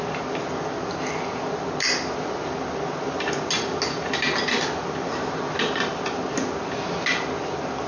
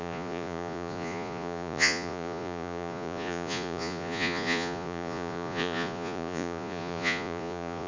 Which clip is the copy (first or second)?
second